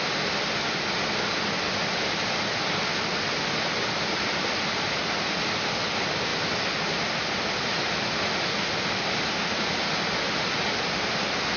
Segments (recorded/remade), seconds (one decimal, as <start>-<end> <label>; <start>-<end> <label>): 0.0-11.6 recorded